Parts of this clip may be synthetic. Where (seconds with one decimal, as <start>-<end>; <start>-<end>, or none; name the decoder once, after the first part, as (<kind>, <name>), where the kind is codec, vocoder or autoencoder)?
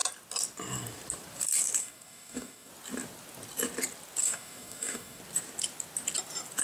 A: 1.8-2.7 (codec, DAC); 4.2-5.2